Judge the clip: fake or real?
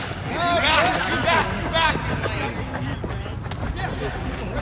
real